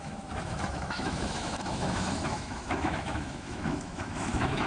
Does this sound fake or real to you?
fake